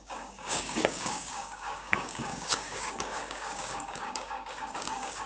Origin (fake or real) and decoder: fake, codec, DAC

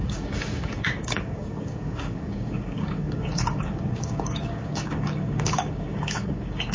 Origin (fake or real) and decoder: fake, codec, DAC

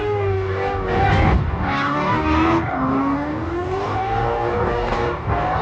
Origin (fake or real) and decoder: fake, codec, DAC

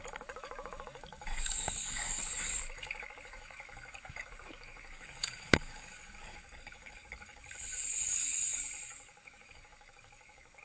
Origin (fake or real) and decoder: fake, codec, DAC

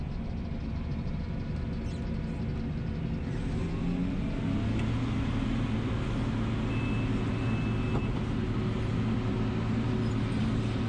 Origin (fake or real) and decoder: real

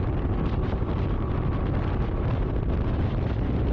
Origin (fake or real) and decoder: real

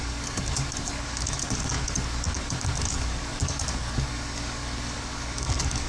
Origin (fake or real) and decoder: fake, codec, DAC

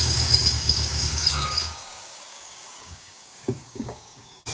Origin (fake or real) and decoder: fake, codec, DAC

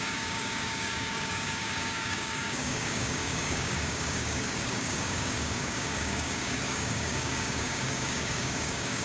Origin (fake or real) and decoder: fake, codec, DAC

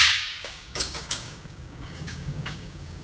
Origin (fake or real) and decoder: fake, codec, DAC